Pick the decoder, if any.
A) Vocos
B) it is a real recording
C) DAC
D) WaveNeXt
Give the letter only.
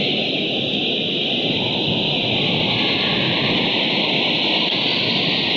B